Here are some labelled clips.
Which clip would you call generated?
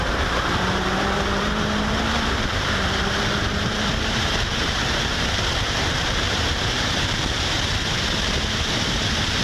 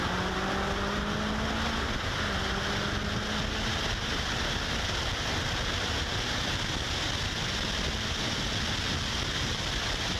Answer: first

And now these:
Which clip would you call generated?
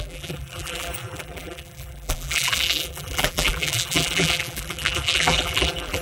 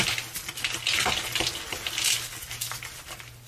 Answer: first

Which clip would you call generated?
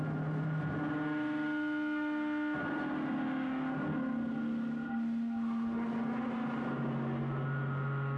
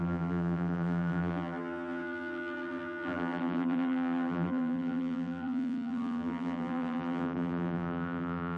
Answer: second